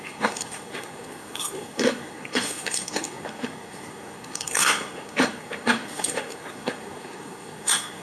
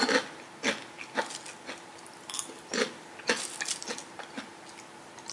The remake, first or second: first